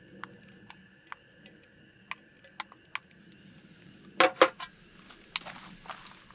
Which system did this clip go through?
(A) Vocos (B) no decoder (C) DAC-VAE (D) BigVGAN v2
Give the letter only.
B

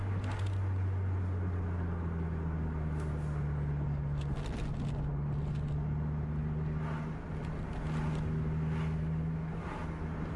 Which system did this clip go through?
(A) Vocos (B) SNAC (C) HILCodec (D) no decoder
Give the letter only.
D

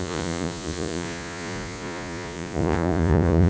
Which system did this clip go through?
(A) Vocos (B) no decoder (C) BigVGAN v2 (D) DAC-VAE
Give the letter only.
A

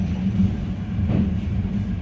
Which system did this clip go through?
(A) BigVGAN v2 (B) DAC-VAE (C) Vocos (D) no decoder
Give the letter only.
D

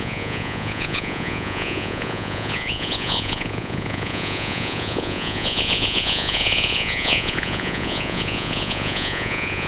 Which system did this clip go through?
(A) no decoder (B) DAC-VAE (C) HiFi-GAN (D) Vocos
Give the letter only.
D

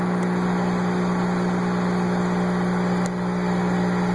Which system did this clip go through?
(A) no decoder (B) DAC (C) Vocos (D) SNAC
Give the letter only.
A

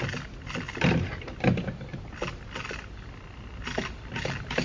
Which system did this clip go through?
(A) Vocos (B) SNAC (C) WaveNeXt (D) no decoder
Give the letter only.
D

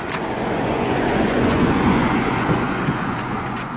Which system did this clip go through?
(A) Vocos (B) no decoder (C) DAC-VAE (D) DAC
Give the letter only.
A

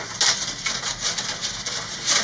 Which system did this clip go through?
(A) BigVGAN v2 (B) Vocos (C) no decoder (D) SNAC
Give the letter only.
C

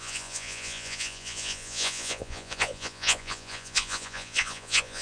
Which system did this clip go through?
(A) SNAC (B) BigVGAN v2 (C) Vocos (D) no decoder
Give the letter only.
C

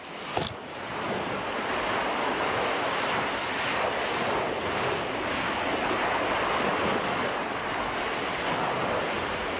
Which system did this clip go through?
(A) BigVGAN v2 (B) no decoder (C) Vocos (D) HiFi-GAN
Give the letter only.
B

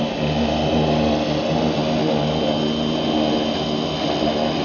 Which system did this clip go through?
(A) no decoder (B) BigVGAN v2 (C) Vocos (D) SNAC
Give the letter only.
A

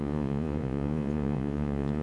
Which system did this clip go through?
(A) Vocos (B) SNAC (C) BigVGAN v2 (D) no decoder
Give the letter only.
A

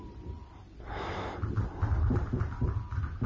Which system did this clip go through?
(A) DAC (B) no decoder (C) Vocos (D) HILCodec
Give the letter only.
B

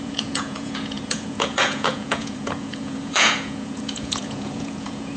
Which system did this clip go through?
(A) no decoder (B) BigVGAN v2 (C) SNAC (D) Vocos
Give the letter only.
D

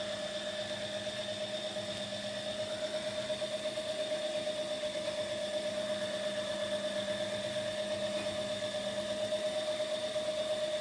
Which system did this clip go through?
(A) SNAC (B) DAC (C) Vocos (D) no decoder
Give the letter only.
D